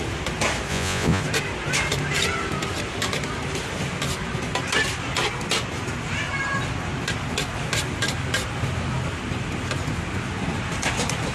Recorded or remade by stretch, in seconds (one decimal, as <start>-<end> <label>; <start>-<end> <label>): 0.0-0.7 recorded; 0.7-1.2 remade; 1.2-11.3 recorded